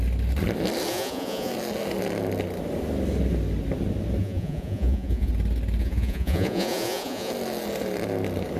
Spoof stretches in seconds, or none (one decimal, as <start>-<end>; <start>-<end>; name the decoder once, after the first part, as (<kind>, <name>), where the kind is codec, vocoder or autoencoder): 0.9-1.5 (vocoder, Vocos); 4.2-5.3; 5.8-7.3